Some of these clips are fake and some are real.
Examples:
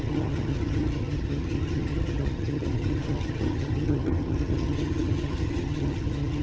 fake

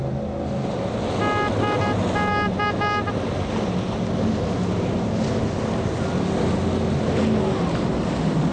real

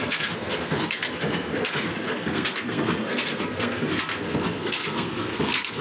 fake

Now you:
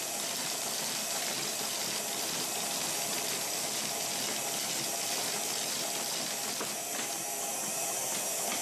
real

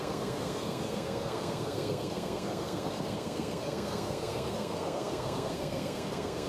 fake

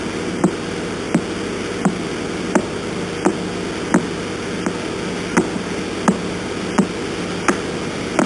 real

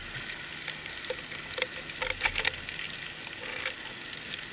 real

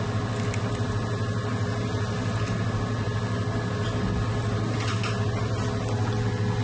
real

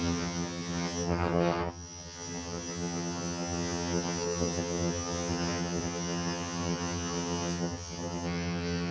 fake